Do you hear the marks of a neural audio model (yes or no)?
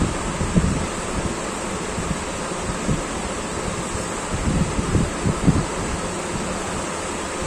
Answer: no